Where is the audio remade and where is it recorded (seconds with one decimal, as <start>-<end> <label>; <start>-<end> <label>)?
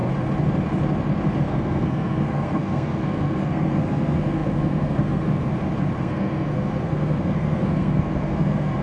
0.0-1.4 recorded; 1.4-5.5 remade; 5.5-6.0 recorded; 6.0-8.8 remade